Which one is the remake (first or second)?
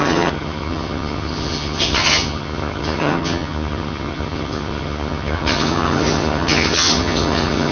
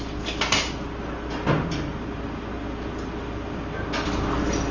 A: first